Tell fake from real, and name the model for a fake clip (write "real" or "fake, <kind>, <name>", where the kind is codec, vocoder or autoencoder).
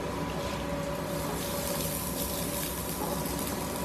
real